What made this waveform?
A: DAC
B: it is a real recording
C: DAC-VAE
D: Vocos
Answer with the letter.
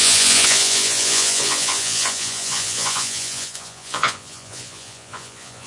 D